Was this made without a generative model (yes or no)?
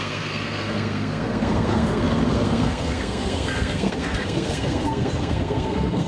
no